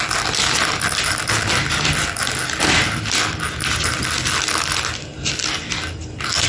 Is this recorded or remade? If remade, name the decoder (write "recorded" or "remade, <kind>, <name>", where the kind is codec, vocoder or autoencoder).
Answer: recorded